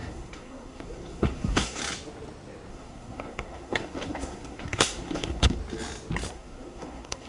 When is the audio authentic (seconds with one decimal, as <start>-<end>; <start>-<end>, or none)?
1.8-2.7; 5.6-6.3